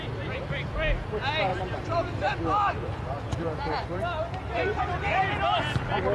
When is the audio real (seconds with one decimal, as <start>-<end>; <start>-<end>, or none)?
0.0-1.5; 4.8-6.1